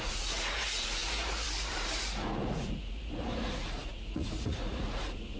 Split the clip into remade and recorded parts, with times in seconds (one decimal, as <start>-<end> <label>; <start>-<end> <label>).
0.0-5.4 remade